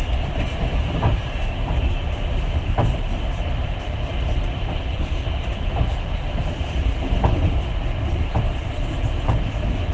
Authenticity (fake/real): real